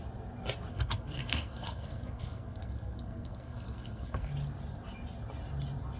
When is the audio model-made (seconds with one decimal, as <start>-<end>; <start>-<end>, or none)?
0.7-4.3

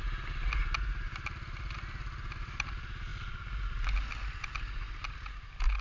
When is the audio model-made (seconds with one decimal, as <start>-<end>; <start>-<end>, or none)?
none